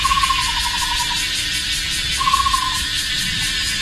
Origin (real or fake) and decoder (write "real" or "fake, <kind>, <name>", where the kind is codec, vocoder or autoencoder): real